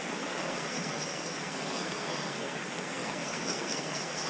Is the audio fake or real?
fake